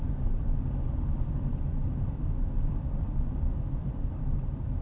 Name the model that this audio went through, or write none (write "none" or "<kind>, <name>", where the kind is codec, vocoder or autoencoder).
vocoder, BigVGAN v2